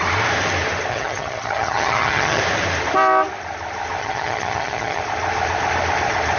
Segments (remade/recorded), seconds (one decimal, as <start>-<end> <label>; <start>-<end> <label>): 0.0-0.9 recorded; 0.9-2.4 remade; 2.4-4.0 recorded; 4.0-5.0 remade; 5.0-6.4 recorded